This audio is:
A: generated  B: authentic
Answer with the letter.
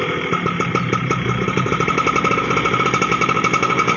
A